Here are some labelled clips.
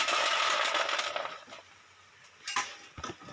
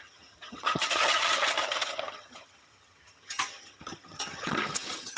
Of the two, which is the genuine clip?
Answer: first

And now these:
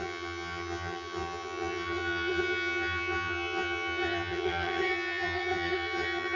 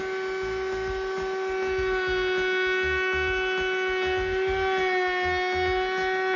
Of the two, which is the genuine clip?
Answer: second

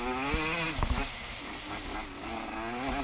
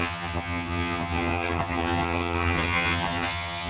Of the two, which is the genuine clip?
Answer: first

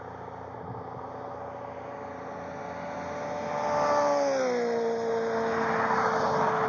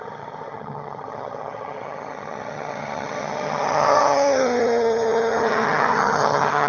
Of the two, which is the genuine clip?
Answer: first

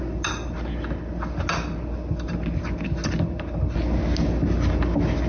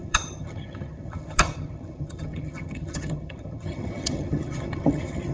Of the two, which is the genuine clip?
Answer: first